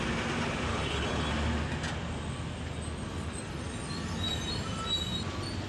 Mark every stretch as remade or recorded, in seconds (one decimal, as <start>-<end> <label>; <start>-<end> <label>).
0.0-0.7 recorded; 0.7-1.3 remade; 1.3-5.7 recorded